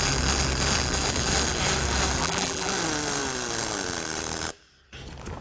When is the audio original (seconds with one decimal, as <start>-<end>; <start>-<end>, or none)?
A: 0.0-2.2; 2.7-5.4